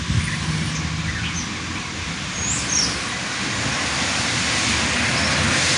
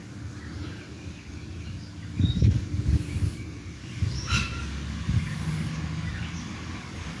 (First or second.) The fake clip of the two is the second